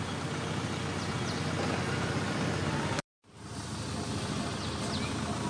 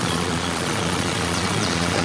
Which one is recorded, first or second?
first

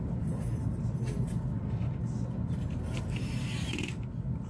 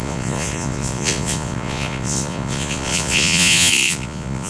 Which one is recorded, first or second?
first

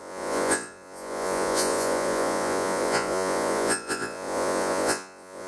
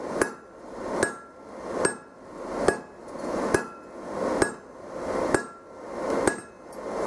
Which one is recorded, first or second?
second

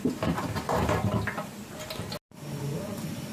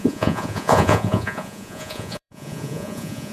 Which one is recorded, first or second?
first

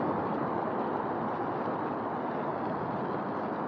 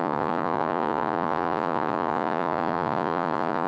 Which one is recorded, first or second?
first